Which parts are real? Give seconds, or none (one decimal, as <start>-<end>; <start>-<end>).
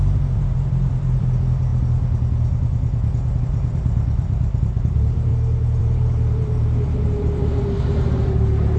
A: 1.7-3.4; 5.3-5.8